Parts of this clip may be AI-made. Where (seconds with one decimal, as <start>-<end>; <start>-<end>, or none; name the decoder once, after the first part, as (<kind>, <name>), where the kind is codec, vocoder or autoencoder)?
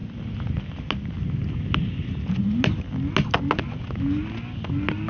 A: none